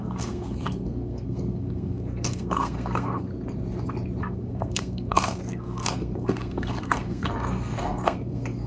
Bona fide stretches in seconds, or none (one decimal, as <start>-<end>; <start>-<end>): 3.3-4.2